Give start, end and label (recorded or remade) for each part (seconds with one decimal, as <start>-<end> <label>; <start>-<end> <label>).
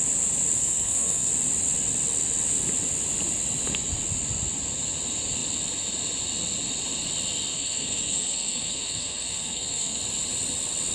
0.0-0.6 recorded; 0.6-1.3 remade; 1.3-7.5 recorded; 7.5-10.0 remade; 10.0-10.9 recorded